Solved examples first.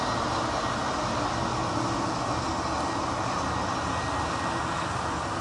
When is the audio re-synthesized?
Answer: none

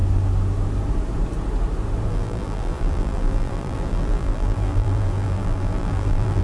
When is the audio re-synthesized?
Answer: 2.1-6.4 (vocoder, BigVGAN v2)

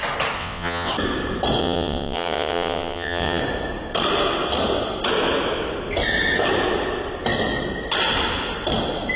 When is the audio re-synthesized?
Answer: 0.4-0.9 (vocoder, WaveNeXt); 1.6-3.4